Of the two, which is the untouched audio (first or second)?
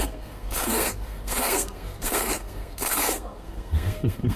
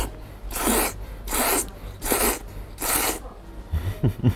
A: second